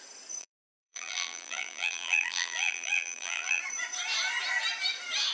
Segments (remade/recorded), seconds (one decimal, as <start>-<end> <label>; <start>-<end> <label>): 0.0-0.4 recorded; 0.4-3.6 remade; 3.6-5.3 recorded